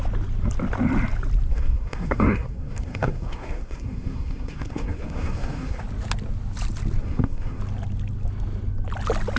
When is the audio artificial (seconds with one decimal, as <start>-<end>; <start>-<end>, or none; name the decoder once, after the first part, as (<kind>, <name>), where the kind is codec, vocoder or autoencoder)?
1.5-5.8 (codec, SNAC); 7.0-7.6